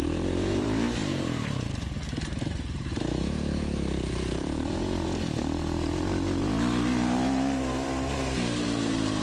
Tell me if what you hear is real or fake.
fake